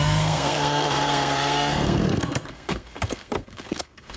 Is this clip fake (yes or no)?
yes